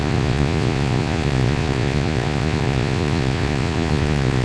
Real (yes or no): no